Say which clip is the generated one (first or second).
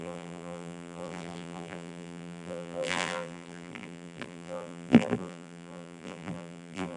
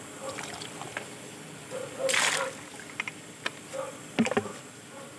first